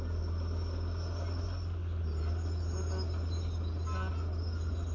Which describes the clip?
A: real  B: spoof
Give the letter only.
A